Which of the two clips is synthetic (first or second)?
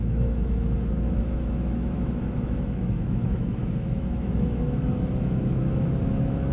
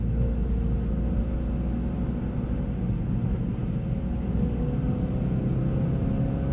first